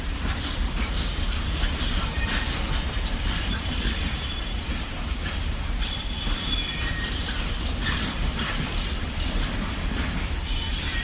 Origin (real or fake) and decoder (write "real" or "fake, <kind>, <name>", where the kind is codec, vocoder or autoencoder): fake, vocoder, BigVGAN v2